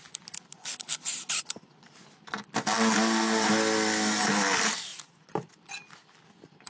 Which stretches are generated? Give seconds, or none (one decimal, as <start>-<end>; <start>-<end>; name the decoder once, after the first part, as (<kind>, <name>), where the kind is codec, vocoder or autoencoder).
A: none